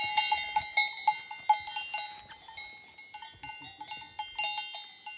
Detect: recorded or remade recorded